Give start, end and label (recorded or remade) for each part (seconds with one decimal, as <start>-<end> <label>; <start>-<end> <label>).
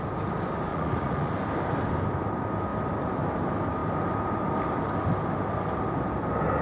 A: 0.0-0.7 recorded; 0.7-1.3 remade; 1.3-6.6 recorded